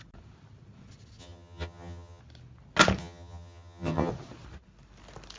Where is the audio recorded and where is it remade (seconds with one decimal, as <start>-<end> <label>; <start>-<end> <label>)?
0.0-1.2 recorded; 1.2-2.2 remade; 2.2-3.0 recorded; 3.0-4.1 remade; 4.1-5.4 recorded